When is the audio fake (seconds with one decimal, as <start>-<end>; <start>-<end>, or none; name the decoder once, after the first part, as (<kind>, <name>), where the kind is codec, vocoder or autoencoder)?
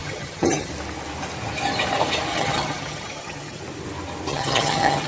0.0-0.7 (vocoder, HiFi-GAN); 2.3-3.6; 4.3-5.1